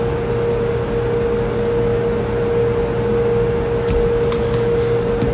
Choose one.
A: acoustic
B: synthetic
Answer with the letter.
A